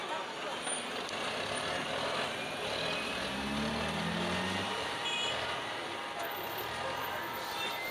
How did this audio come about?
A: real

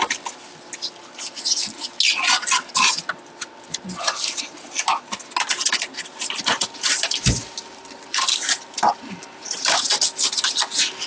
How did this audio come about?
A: real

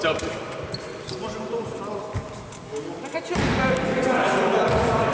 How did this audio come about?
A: real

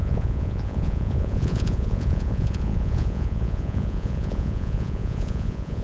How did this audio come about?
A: fake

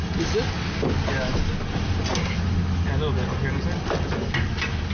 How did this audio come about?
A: real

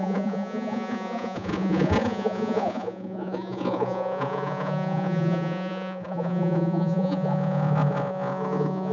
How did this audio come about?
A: fake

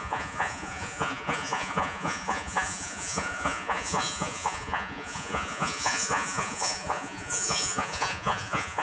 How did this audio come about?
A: fake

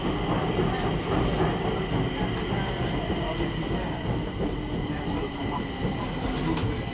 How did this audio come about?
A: real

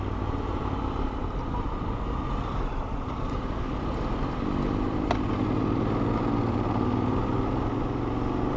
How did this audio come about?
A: real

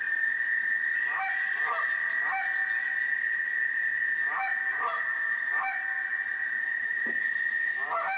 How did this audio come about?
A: real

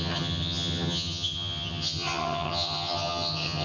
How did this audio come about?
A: fake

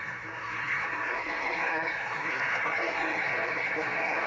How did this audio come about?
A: fake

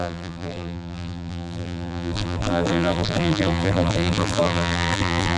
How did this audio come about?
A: fake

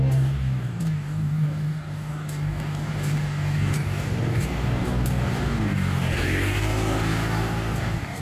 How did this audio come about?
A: fake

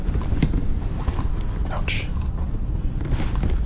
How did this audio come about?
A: real